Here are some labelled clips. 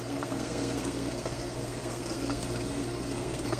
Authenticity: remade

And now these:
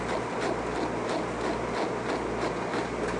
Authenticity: recorded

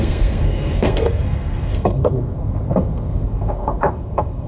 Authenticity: remade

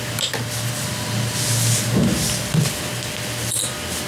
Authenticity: recorded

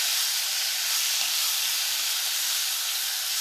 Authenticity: recorded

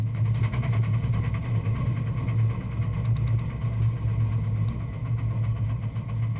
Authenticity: recorded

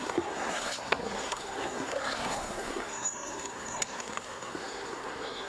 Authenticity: remade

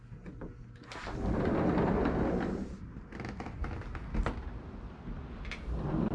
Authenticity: recorded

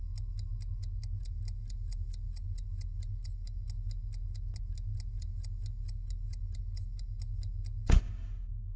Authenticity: recorded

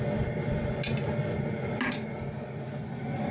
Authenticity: recorded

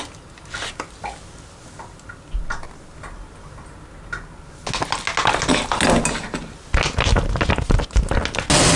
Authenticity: recorded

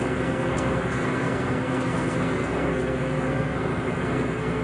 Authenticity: remade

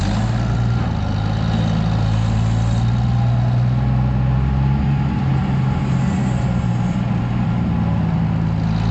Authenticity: recorded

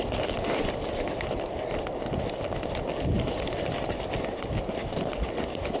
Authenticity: recorded